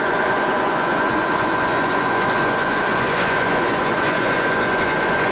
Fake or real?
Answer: fake